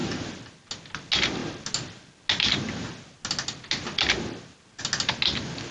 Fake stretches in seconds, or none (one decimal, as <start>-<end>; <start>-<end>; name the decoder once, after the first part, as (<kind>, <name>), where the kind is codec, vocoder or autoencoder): none